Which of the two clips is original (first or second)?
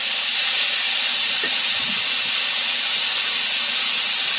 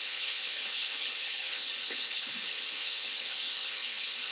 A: first